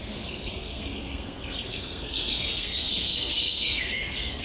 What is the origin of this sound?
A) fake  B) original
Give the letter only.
A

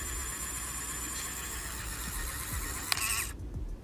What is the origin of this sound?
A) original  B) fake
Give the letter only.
A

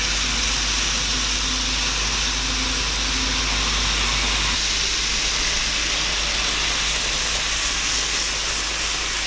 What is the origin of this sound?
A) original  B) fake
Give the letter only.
A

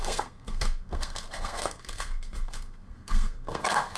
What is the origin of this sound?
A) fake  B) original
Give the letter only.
A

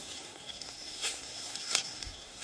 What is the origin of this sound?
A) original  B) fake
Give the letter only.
B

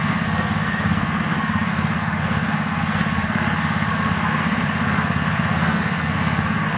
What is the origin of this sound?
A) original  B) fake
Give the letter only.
B